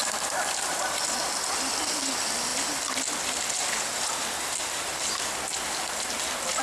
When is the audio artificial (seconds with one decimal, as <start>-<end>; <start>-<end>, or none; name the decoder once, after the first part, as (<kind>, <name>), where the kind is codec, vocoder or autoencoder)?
0.0-1.2 (vocoder, BigVGAN v2)